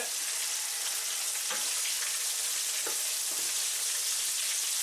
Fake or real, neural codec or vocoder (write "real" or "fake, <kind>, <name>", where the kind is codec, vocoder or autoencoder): real